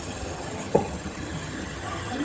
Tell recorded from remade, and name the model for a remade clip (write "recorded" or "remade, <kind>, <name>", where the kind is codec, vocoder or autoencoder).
remade, vocoder, HiFi-GAN